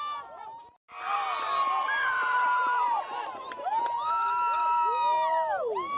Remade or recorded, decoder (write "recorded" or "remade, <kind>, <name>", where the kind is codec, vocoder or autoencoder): recorded